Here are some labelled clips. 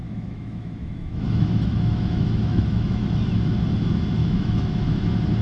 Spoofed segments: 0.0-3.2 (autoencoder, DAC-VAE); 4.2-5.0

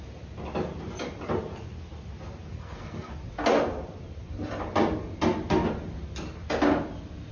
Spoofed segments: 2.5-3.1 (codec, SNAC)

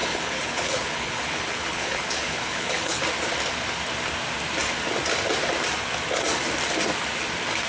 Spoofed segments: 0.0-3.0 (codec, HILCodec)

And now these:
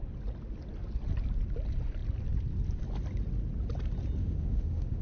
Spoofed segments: 4.2-5.0 (autoencoder, DAC-VAE)